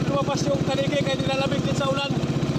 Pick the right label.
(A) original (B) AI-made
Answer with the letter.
A